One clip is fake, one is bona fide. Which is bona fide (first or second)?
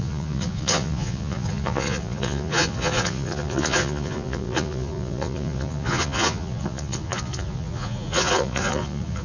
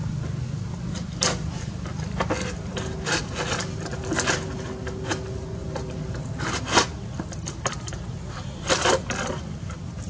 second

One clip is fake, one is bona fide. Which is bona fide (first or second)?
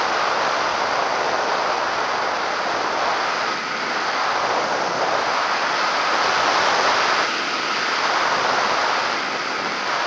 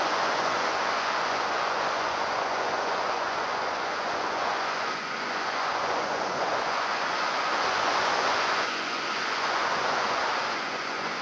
first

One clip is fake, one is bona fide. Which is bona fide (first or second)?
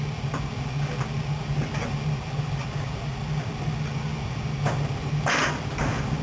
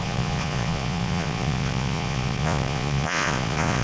first